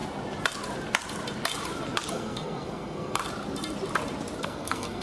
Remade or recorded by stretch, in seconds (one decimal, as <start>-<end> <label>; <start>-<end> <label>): 0.0-2.1 recorded; 2.1-3.2 remade; 3.2-4.4 recorded; 4.4-5.0 remade